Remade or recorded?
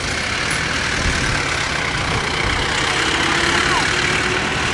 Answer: recorded